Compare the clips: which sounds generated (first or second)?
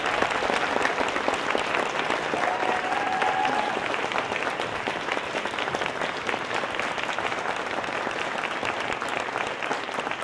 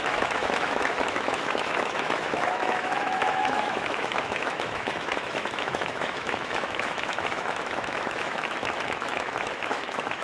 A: second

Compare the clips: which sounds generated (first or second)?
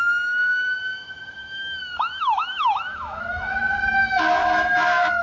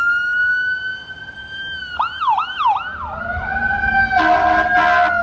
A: first